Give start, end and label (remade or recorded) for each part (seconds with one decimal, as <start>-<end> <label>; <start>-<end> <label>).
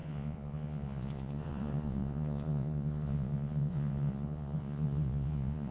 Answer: 0.0-5.7 remade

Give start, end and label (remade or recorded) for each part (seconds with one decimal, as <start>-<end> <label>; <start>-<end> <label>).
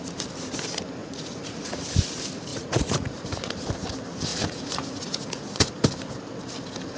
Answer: 0.0-1.0 recorded; 1.0-1.9 remade; 1.9-2.5 recorded; 2.5-3.5 remade; 3.5-4.3 recorded; 4.3-5.7 remade; 5.7-7.0 recorded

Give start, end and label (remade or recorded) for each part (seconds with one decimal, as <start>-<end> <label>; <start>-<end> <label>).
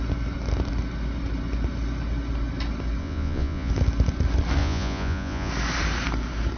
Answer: 0.0-3.0 recorded; 3.0-3.7 remade; 3.7-4.6 recorded; 4.6-5.5 remade; 5.5-6.6 recorded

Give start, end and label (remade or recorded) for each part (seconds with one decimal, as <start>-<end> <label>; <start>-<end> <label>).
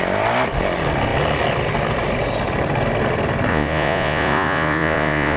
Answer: 0.0-3.5 recorded; 3.5-5.4 remade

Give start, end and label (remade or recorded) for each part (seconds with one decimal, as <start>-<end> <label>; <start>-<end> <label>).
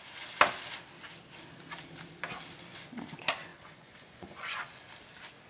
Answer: 0.0-3.5 recorded; 3.5-4.9 remade; 4.9-5.5 recorded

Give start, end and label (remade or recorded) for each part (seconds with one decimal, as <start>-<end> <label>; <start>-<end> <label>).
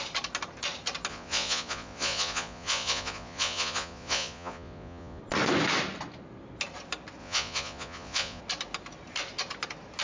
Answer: 0.0-1.1 recorded; 1.1-5.2 remade; 5.2-7.2 recorded; 7.2-8.4 remade; 8.4-10.0 recorded